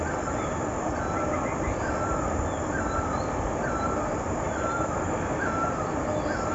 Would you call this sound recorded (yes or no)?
yes